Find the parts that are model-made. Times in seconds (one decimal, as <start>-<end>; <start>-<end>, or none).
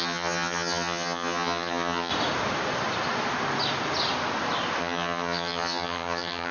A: 0.0-2.1; 4.8-6.5